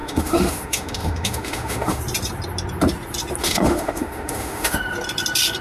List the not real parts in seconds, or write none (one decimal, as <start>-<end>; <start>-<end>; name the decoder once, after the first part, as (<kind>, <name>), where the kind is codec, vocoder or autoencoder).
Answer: 0.0-2.0 (autoencoder, DAC-VAE); 3.4-4.8